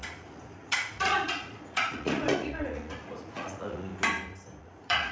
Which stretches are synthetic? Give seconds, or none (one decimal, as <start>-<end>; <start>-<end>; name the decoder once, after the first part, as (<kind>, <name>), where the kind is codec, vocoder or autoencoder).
0.0-3.9 (vocoder, Vocos); 4.6-5.1

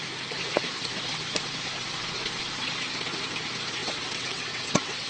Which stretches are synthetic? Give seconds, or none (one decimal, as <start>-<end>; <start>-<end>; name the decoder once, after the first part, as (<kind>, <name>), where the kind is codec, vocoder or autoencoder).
3.8-5.1 (vocoder, WaveNeXt)

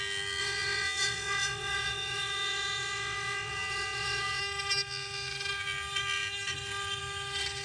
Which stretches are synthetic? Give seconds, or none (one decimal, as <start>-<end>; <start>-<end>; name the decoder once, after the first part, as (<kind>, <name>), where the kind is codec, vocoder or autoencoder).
0.4-4.4 (vocoder, WaveNeXt)

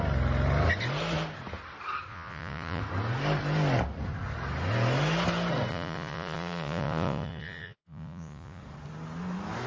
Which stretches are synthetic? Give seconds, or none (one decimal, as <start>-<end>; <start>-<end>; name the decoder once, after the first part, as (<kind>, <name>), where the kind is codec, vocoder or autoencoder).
2.1-2.8 (vocoder, Vocos); 5.7-8.6